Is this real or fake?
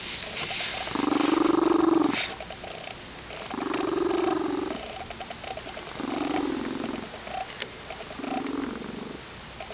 real